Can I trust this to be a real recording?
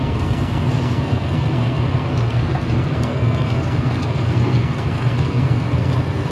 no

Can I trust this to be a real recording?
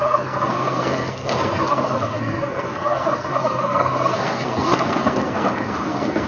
no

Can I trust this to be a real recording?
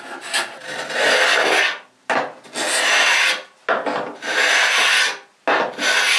yes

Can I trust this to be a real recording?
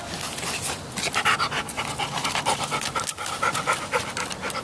yes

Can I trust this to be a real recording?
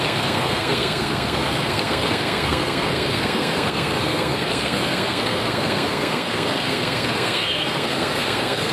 no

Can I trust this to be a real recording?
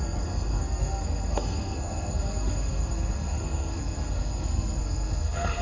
no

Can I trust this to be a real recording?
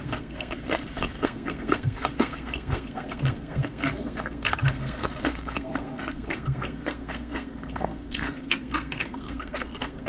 no